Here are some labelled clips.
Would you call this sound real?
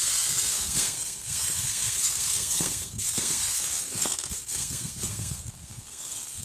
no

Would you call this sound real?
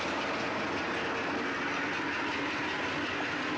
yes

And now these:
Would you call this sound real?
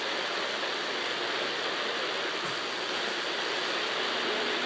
yes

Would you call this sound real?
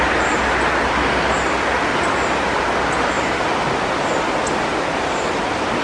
yes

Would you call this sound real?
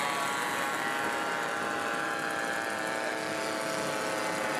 yes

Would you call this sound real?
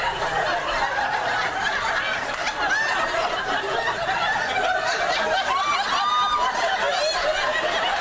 yes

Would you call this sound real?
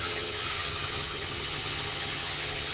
no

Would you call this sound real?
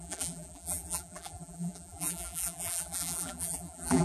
no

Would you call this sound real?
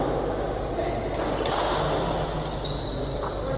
yes